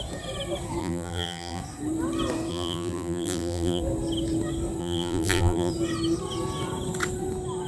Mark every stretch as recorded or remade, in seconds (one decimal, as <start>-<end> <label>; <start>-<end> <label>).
0.0-0.8 recorded; 0.8-1.6 remade; 1.6-2.5 recorded; 2.5-3.8 remade; 3.8-4.8 recorded; 4.8-5.7 remade; 5.7-7.7 recorded